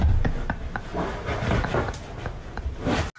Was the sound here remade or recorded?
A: recorded